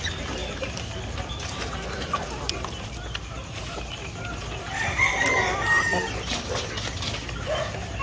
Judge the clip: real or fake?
real